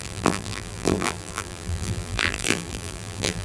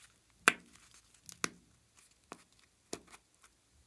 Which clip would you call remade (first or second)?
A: first